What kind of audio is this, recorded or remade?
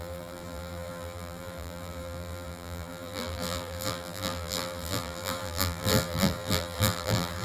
remade